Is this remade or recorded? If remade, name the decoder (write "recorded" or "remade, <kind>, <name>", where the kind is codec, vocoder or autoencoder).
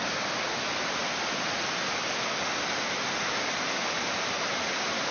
recorded